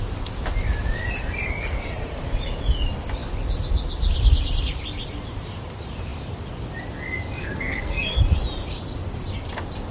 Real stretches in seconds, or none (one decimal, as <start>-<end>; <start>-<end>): 0.0-7.4; 8.2-9.9